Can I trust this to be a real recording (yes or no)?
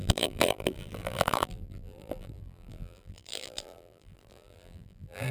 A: no